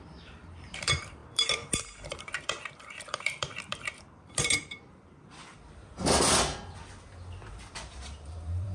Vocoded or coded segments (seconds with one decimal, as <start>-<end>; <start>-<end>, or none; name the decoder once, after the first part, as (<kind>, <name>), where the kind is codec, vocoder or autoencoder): 0.0-5.4 (vocoder, BigVGAN v2); 7.5-8.7